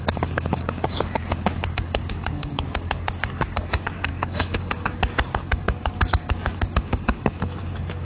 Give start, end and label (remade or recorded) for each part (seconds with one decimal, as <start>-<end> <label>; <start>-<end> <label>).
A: 0.0-8.0 remade